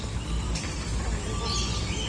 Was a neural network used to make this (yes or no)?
no